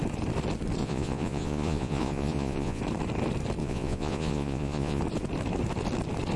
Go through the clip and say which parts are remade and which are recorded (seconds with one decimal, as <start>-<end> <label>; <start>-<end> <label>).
0.0-0.8 recorded; 0.8-2.8 remade; 2.8-3.6 recorded; 3.6-5.0 remade; 5.0-6.4 recorded